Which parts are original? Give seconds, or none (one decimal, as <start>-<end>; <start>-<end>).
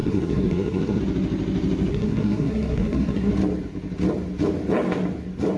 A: 1.0-1.9; 3.3-5.6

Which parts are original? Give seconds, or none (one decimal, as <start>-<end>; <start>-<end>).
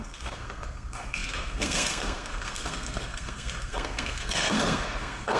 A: none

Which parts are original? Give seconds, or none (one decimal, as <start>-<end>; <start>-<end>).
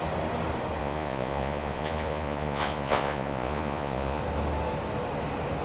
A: 0.0-0.8; 4.2-5.6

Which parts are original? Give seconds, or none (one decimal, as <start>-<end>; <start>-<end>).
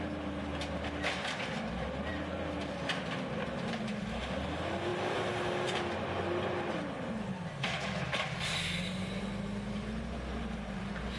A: 0.0-11.2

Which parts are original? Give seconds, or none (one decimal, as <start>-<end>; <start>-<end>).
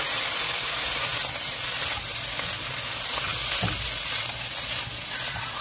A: 0.0-5.6